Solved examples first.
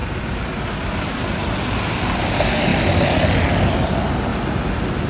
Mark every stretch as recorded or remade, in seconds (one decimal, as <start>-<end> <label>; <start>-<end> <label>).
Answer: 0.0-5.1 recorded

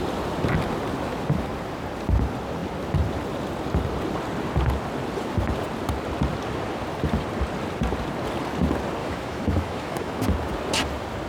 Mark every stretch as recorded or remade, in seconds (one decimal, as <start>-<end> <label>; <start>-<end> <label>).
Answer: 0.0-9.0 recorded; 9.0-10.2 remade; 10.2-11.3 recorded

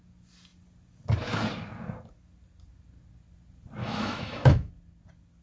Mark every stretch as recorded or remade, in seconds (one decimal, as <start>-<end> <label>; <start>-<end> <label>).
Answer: 0.0-3.8 recorded; 3.8-4.7 remade; 4.7-5.4 recorded

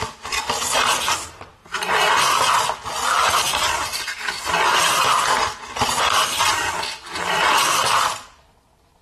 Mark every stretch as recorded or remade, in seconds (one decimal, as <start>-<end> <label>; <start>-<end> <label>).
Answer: 0.0-9.0 recorded

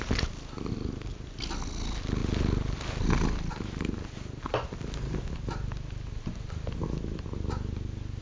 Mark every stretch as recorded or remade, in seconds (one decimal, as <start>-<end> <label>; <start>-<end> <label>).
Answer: 0.0-8.2 recorded